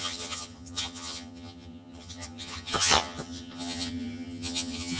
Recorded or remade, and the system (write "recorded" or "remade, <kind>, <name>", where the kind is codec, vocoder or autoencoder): remade, vocoder, HiFi-GAN